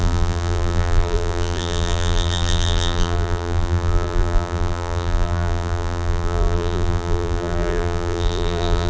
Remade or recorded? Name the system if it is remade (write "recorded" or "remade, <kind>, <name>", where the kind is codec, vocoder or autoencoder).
remade, vocoder, BigVGAN v2